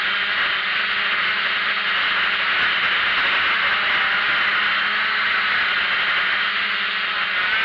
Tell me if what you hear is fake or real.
real